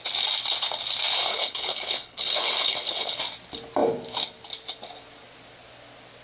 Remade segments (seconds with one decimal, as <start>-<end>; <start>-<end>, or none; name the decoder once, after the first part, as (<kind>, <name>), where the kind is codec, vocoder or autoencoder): 1.3-3.2 (codec, HILCodec)